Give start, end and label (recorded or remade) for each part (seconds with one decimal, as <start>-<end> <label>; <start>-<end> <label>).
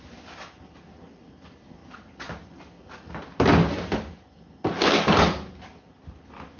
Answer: 0.0-6.6 recorded